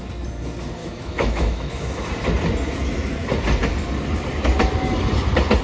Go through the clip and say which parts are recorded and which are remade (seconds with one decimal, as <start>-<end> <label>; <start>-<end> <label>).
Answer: 0.0-0.8 recorded; 0.8-2.1 remade; 2.1-5.6 recorded